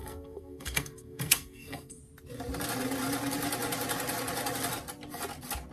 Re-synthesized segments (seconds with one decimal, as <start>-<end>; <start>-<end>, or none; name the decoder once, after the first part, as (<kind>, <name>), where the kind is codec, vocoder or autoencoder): 0.0-2.0 (codec, SNAC)